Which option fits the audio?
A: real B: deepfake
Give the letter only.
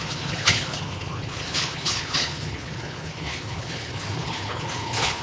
B